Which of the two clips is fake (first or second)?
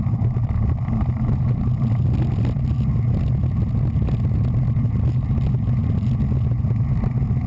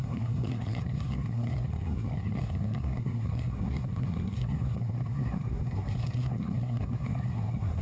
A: second